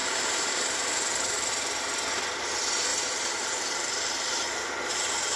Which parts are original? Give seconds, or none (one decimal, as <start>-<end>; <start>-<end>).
1.5-2.9; 4.7-5.4

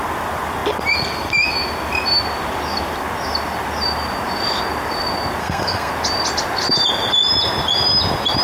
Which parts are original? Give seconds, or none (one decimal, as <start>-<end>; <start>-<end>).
0.0-5.4; 5.9-8.4

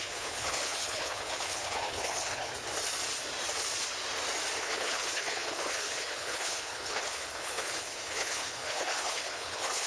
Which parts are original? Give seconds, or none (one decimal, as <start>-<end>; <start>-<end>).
2.5-4.6